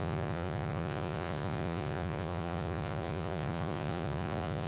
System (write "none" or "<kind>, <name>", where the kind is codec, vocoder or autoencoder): vocoder, Vocos